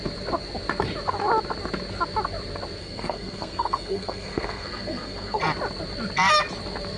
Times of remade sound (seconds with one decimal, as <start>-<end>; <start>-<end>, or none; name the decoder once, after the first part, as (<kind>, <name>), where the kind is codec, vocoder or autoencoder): 2.8-5.4 (codec, SNAC)